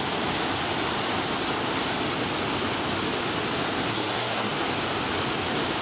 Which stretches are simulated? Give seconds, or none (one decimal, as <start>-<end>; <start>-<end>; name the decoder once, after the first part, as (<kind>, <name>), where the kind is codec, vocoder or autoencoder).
3.9-4.5 (codec, SNAC)

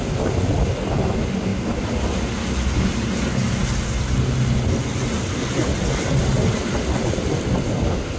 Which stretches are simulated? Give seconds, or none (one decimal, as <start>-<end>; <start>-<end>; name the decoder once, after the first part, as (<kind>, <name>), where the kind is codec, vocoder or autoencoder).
1.5-2.0 (vocoder, BigVGAN v2)

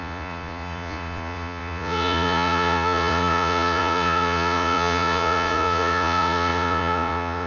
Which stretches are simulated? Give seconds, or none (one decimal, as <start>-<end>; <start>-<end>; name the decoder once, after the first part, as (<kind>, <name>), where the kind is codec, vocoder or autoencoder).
0.0-7.5 (vocoder, Vocos)

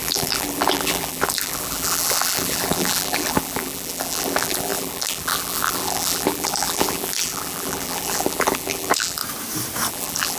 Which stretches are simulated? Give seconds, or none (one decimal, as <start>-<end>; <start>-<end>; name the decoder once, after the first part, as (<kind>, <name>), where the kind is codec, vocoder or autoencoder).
0.0-9.2 (vocoder, BigVGAN v2); 9.9-10.4

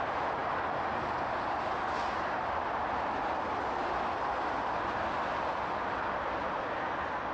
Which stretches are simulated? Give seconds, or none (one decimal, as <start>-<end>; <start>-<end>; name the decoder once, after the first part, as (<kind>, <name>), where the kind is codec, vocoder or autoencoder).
none